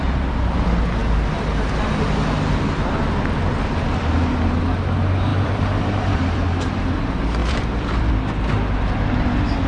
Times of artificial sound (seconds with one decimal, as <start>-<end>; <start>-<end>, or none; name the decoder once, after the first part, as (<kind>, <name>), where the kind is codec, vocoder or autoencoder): 5.3-6.7 (vocoder, BigVGAN v2); 7.4-8.1